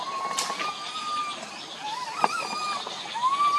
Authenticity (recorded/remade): recorded